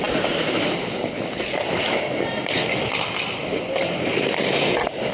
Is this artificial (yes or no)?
no